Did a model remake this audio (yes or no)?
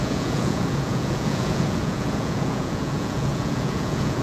yes